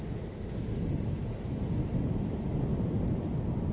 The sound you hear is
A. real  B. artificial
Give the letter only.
A